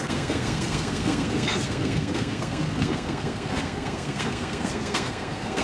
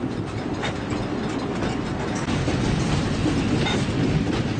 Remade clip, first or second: first